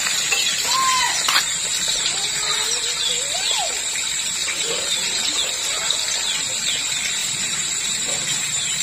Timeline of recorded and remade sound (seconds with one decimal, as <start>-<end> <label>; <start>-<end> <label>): 0.0-1.9 recorded; 1.9-3.1 remade; 3.1-4.4 recorded; 4.4-5.5 remade; 5.5-7.2 recorded; 7.2-8.8 remade